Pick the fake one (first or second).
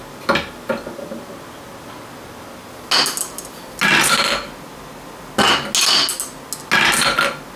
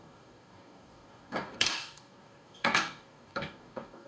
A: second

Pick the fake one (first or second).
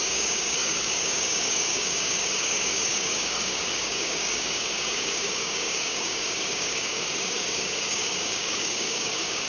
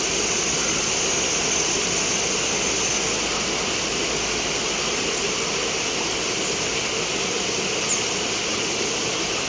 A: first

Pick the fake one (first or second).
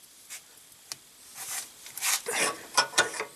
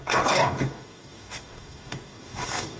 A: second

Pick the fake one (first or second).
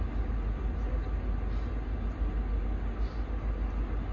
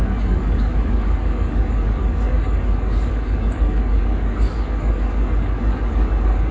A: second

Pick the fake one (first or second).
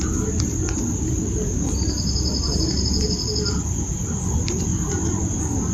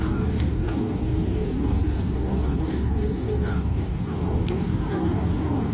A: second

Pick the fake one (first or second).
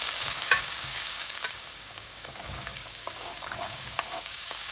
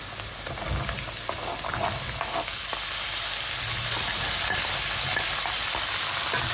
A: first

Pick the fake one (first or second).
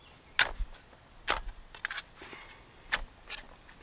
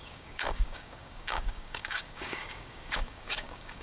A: second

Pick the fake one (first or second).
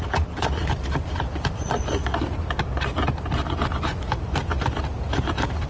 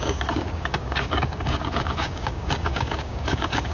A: second